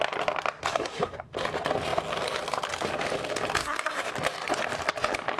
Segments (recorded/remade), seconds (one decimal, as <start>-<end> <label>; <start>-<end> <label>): 0.0-0.7 recorded; 0.7-1.3 remade; 1.3-3.6 recorded; 3.6-4.1 remade; 4.1-5.4 recorded